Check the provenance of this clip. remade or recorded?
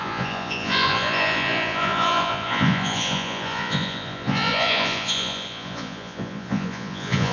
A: remade